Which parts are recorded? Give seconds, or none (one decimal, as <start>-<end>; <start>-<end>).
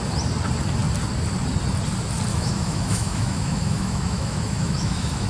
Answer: 0.0-2.3